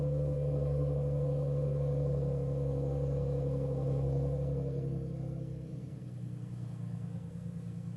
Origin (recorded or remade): remade